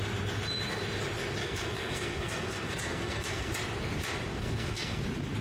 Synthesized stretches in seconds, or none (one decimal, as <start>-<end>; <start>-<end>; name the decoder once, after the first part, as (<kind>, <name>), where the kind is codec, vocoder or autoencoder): 1.4-3.5 (codec, SNAC); 4.3-5.0